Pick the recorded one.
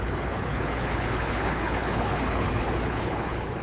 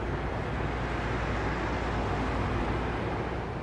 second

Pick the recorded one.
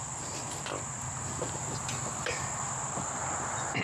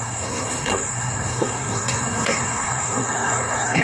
first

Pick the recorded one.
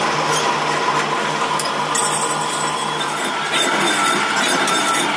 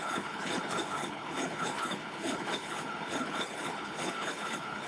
first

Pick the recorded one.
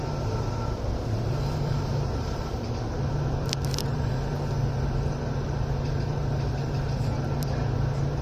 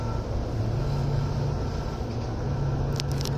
second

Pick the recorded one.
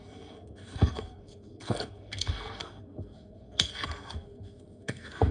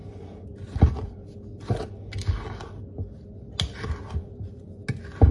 second